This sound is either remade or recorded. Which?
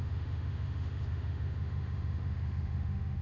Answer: remade